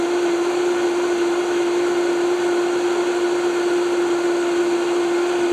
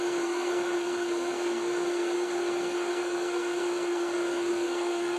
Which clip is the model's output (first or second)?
second